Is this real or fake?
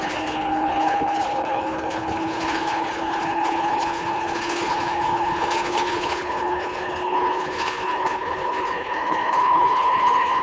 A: fake